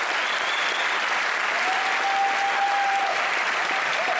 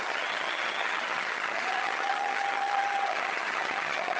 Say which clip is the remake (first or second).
second